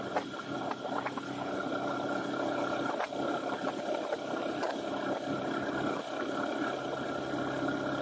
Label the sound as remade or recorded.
recorded